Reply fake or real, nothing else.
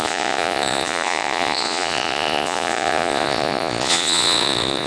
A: fake